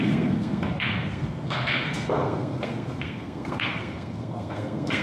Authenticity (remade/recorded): remade